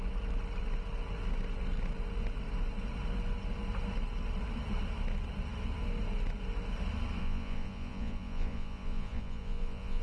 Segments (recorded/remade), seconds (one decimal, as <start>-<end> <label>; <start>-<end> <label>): 0.0-7.2 recorded; 7.2-10.0 remade